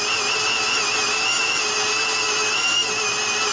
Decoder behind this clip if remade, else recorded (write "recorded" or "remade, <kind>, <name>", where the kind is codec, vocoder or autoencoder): recorded